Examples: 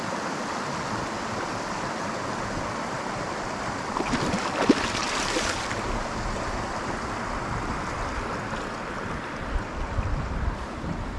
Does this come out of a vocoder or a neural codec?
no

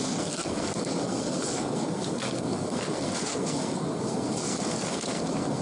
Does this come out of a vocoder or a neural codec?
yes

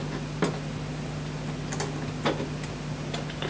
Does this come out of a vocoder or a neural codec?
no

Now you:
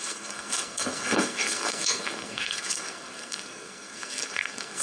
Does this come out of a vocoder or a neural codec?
yes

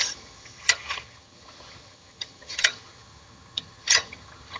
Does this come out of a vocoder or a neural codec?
yes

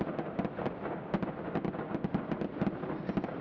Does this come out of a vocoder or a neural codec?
no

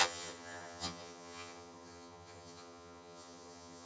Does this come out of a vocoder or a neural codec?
yes